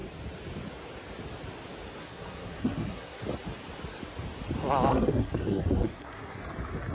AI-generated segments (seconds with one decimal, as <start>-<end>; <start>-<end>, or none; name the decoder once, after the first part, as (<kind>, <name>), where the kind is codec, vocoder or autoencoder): 2.0-3.2 (codec, SNAC); 4.9-6.4